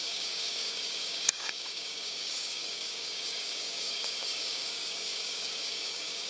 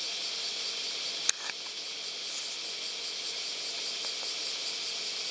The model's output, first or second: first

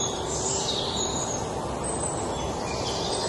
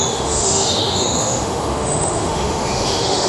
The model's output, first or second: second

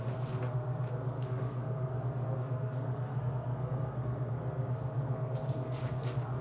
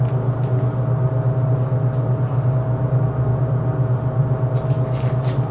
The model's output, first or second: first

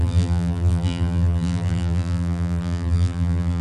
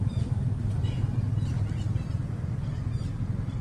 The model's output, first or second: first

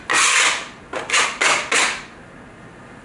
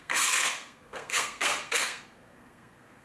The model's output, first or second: second